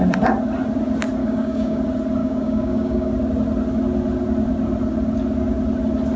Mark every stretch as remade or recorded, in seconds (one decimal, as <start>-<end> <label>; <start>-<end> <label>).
0.0-1.2 recorded; 1.2-1.8 remade; 1.8-2.2 recorded; 2.2-3.1 remade; 3.1-6.2 recorded